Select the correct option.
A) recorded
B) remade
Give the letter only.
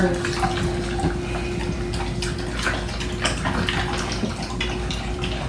A